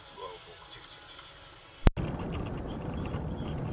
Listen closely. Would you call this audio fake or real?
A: real